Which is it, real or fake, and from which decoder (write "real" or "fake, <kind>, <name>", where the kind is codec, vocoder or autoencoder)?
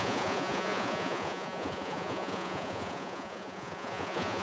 fake, vocoder, Vocos